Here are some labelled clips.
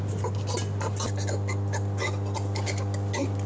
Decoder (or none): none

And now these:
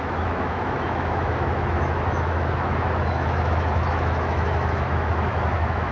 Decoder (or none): autoencoder, DAC-VAE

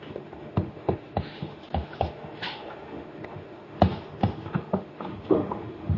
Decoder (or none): autoencoder, DAC-VAE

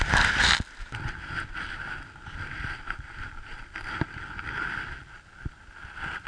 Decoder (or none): none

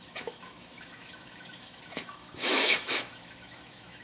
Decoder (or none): autoencoder, DAC-VAE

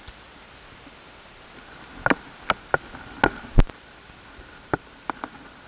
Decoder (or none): none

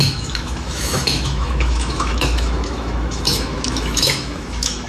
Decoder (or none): autoencoder, DAC-VAE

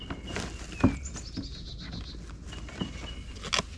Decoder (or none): none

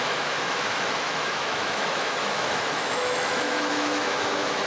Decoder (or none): autoencoder, DAC-VAE